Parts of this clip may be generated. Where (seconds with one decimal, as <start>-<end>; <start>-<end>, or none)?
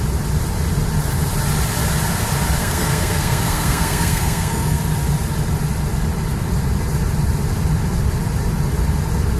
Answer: 2.6-4.8